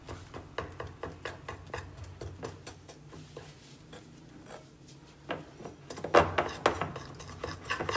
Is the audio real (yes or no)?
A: yes